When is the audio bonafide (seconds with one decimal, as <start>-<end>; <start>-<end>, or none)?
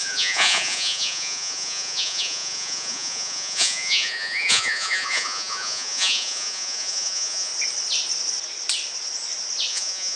7.5-9.7